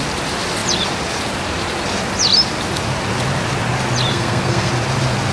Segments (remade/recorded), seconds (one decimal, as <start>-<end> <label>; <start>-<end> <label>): 0.0-4.1 recorded; 4.1-4.7 remade; 4.7-5.3 recorded